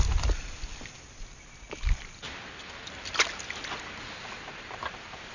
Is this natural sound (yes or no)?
yes